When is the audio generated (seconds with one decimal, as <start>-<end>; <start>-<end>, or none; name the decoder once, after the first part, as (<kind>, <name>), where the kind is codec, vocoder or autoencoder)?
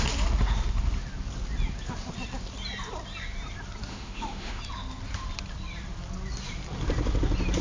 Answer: 3.9-4.6 (autoencoder, DAC-VAE)